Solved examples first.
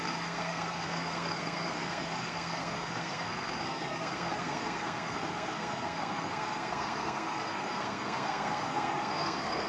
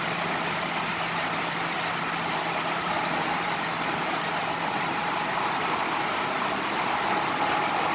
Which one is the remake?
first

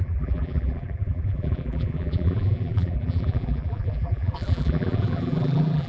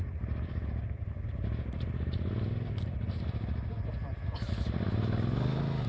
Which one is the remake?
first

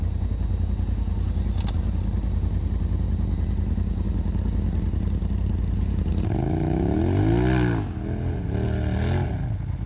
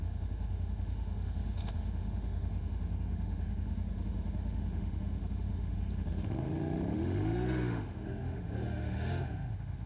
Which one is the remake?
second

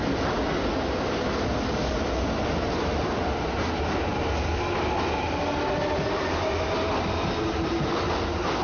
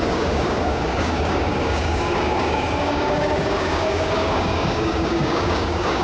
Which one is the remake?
second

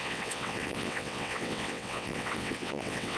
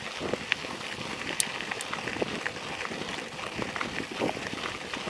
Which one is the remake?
first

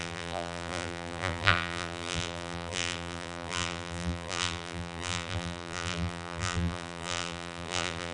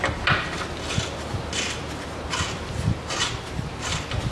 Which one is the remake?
first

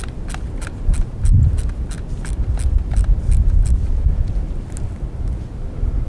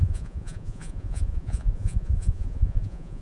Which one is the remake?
second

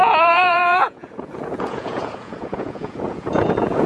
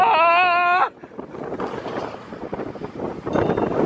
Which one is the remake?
first